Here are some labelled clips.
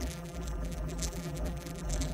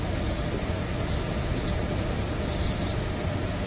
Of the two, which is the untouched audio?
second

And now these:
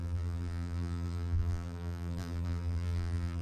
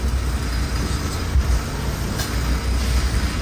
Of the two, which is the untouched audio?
second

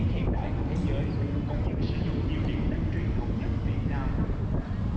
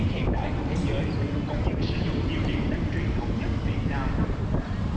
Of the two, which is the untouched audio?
first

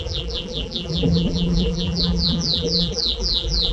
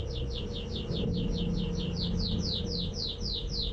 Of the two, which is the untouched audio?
second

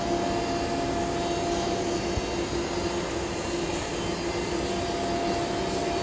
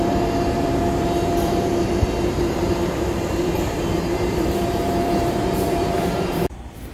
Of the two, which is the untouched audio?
first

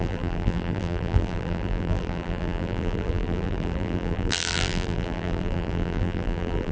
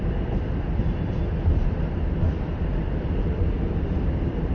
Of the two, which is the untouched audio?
second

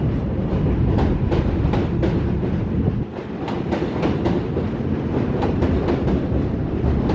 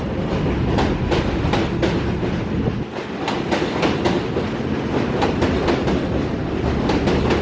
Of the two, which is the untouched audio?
second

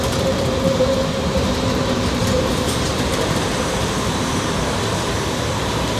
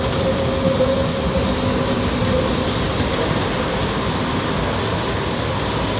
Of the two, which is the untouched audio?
second